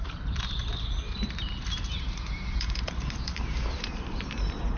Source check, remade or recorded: remade